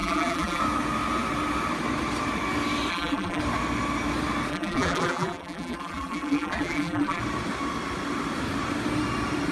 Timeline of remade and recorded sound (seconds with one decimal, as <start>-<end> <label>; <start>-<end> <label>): 0.0-0.6 remade; 0.6-2.9 recorded; 2.9-3.4 remade; 3.4-4.5 recorded; 4.5-7.2 remade; 7.2-9.5 recorded